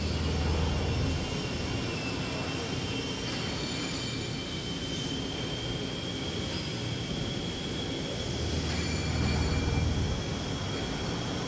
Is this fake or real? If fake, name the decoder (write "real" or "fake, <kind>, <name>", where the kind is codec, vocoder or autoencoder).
real